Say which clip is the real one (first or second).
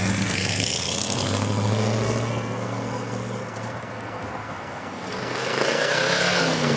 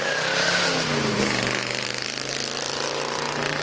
second